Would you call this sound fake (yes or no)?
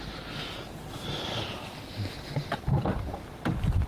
no